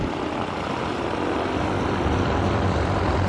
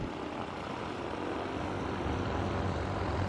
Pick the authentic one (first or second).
second